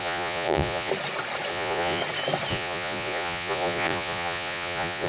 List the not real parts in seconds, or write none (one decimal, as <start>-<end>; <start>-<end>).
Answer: 0.0-0.9; 1.5-2.0; 2.5-5.1

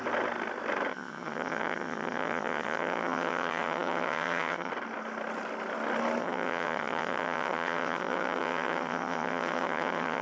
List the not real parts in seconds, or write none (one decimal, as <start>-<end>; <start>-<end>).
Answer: 0.9-4.7; 6.2-10.2

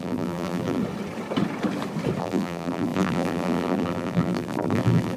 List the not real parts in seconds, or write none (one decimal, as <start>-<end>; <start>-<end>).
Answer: 0.0-0.8; 2.2-5.2